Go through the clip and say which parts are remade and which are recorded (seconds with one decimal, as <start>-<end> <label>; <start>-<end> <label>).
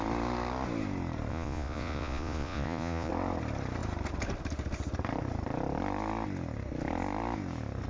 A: 0.0-1.3 recorded; 1.3-3.1 remade; 3.1-7.9 recorded